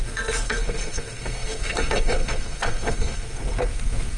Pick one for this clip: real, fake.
fake